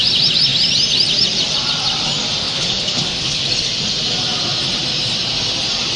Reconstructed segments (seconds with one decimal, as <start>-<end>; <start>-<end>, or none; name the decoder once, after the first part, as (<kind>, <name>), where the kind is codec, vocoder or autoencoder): 2.4-3.4 (codec, HILCodec)